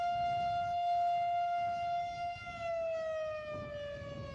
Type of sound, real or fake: real